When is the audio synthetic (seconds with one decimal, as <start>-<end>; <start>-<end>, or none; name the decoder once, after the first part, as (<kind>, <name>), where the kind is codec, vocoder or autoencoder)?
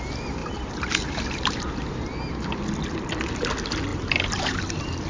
0.4-1.8 (vocoder, BigVGAN v2); 3.9-4.6